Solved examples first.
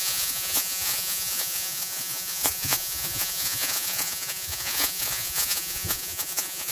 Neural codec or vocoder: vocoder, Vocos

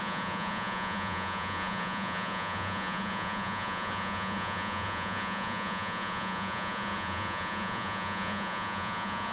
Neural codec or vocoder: vocoder, Vocos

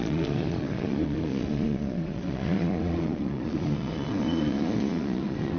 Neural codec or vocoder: vocoder, Vocos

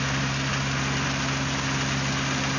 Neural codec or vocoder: none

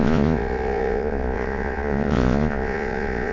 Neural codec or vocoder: vocoder, Vocos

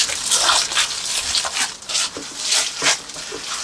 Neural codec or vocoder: none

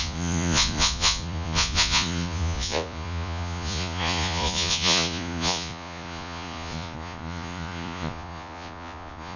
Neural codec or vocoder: vocoder, Vocos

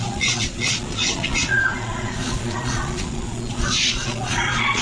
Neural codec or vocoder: vocoder, Vocos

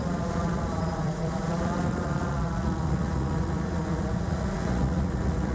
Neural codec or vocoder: vocoder, Vocos